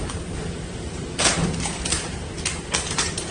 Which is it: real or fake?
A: fake